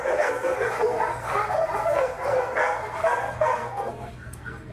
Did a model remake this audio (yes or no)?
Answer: yes